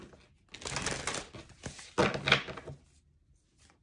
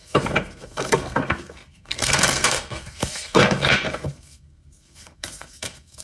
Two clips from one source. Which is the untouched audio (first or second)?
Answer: first